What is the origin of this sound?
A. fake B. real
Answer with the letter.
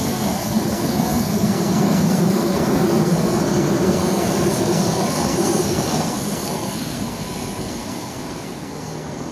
A